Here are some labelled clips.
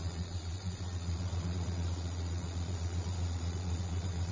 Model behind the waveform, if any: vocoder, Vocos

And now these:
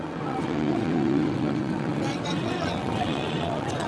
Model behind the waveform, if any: vocoder, WaveNeXt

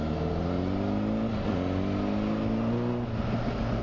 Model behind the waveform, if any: none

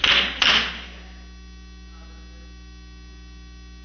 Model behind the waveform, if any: none